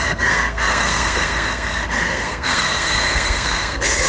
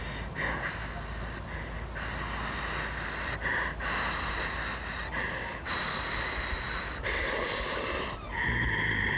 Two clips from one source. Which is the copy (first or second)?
first